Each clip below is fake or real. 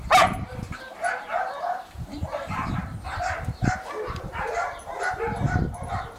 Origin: fake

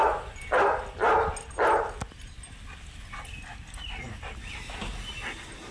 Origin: real